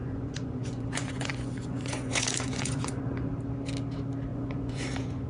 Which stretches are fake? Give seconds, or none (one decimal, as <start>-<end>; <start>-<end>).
0.0-3.0; 4.3-5.3